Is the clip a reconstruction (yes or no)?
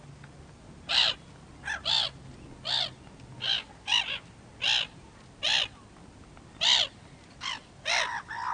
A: no